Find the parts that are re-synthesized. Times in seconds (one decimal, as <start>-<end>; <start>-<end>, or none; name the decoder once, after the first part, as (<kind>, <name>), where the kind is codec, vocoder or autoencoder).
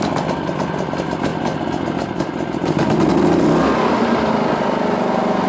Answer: none